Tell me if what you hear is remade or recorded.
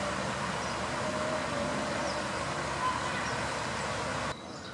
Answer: recorded